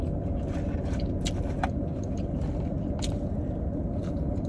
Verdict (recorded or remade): recorded